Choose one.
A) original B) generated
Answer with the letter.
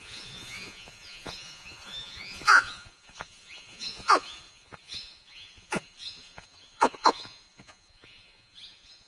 B